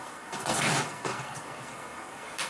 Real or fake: fake